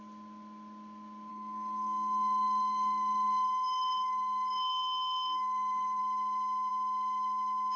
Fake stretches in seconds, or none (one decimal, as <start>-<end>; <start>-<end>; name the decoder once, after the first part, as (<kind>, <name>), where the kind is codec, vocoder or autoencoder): 1.3-6.0 (codec, DAC)